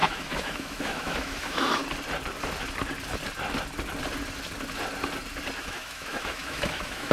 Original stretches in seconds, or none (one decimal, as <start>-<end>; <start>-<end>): 1.8-5.6